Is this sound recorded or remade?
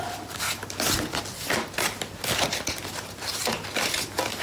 recorded